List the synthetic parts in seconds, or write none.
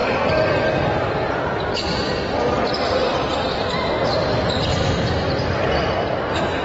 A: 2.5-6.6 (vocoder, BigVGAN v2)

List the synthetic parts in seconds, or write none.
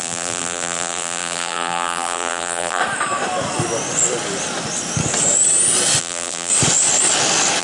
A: 0.0-2.8 (vocoder, BigVGAN v2); 6.0-6.5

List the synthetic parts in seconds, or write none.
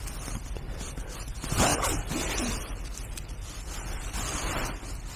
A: none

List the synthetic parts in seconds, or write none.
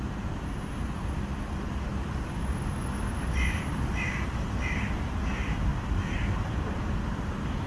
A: none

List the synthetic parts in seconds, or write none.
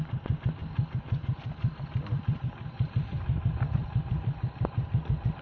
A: none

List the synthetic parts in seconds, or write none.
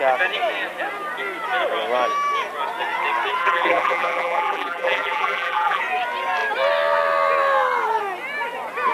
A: 3.4-5.8 (vocoder, BigVGAN v2)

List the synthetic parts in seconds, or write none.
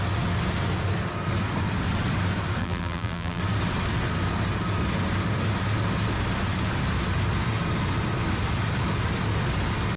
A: 2.6-3.4 (vocoder, BigVGAN v2)